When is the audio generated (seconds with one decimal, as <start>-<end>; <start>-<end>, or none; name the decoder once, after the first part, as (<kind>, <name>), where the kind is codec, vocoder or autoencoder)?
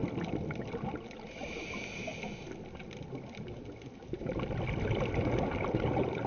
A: none